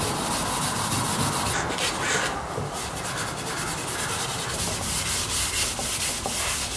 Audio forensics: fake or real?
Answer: real